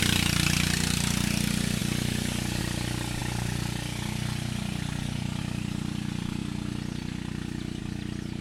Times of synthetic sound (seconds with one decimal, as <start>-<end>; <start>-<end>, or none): none